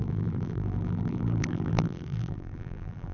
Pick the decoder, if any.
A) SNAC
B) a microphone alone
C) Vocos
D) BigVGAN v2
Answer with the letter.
D